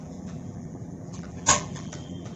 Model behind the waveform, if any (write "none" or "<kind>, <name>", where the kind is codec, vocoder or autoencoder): vocoder, BigVGAN v2